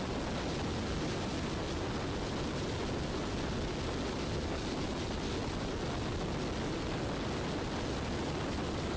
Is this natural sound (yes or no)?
yes